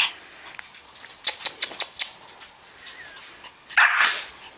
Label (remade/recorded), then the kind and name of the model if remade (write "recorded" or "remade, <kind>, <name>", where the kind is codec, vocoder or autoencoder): recorded